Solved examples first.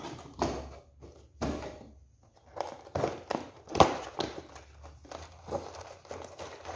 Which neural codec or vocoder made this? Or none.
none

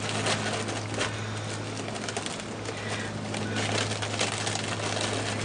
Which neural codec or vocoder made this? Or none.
none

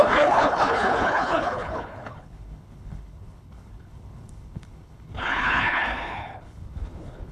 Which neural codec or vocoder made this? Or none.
codec, HILCodec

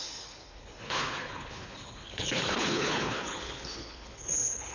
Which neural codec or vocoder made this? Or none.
codec, HILCodec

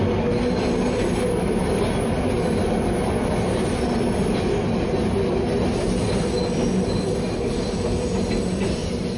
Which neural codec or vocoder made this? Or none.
none